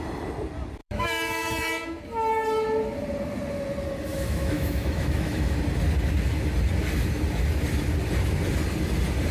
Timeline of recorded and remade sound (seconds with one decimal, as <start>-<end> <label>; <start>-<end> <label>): 0.0-0.8 recorded; 0.8-2.0 remade; 2.0-4.1 recorded; 4.1-5.6 remade; 5.6-9.3 recorded

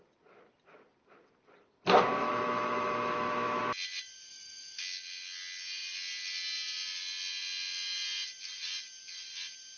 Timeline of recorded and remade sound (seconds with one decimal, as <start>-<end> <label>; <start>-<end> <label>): 0.0-2.2 recorded; 2.2-3.6 remade; 3.6-4.3 recorded; 4.3-4.8 remade; 4.8-9.8 recorded